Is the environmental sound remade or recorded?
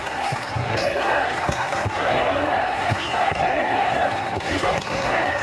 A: remade